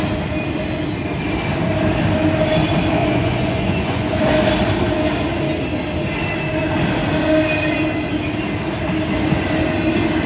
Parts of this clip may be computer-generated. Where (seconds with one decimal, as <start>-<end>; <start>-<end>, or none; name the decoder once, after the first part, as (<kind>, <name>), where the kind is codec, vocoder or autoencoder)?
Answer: 3.0-4.2 (vocoder, Vocos)